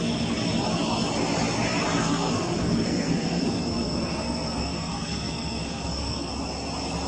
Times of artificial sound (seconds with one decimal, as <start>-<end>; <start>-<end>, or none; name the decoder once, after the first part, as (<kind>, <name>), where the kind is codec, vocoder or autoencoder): 2.0-6.3 (codec, SNAC)